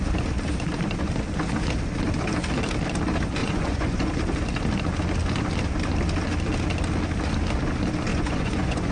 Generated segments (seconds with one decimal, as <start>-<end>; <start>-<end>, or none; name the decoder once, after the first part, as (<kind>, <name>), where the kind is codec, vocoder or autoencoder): 3.4-4.1 (vocoder, Vocos); 8.1-8.9